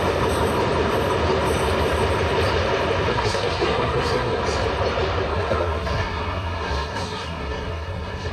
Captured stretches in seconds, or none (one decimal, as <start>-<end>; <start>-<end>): 0.0-3.1; 4.4-5.3